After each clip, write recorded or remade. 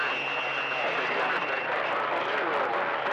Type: recorded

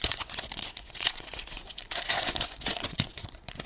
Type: remade